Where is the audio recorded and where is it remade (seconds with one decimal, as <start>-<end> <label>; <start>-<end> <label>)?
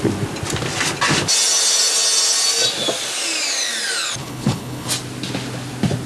0.0-4.2 recorded; 4.2-4.9 remade; 4.9-6.1 recorded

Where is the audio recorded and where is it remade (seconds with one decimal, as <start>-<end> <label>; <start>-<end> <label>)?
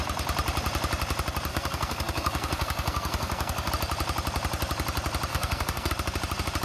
0.0-1.5 recorded; 1.5-3.7 remade; 3.7-5.3 recorded; 5.3-5.9 remade; 5.9-6.6 recorded